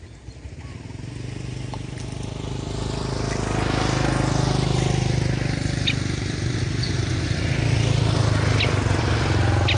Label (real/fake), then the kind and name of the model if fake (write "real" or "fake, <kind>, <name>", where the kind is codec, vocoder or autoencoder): real